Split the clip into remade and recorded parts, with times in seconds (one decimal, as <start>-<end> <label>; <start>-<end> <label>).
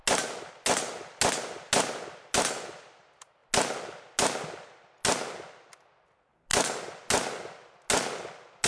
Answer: 0.0-8.7 recorded